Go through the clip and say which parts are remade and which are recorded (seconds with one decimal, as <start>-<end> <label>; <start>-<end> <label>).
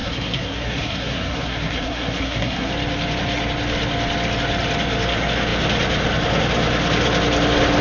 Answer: 0.0-2.7 remade; 2.7-7.8 recorded